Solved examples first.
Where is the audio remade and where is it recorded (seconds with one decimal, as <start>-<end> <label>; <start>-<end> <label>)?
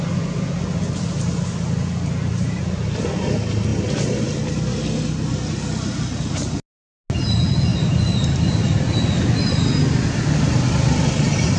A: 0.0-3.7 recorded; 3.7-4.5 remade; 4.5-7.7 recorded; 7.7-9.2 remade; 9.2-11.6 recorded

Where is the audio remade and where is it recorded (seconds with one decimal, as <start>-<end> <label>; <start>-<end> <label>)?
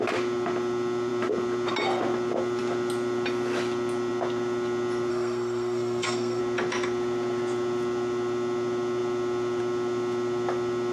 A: 0.0-5.1 recorded; 5.1-6.4 remade; 6.4-10.9 recorded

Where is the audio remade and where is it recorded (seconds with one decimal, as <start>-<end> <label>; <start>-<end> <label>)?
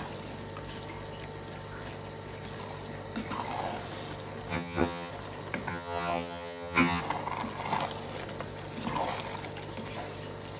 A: 0.0-4.5 recorded; 4.5-5.1 remade; 5.1-5.7 recorded; 5.7-7.0 remade; 7.0-10.6 recorded